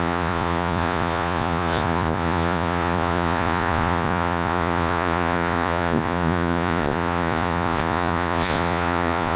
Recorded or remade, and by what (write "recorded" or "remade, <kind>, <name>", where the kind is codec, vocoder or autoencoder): remade, vocoder, Vocos